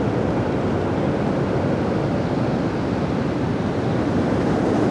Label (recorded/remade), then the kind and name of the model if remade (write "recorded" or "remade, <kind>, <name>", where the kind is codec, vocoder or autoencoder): recorded